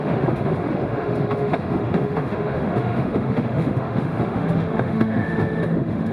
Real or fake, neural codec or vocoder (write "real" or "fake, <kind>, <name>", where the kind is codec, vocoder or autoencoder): fake, autoencoder, DAC-VAE